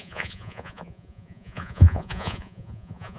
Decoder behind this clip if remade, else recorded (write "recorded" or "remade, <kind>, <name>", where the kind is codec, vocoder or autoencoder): remade, vocoder, Vocos